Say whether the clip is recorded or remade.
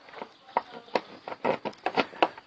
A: recorded